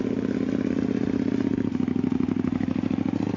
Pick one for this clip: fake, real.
real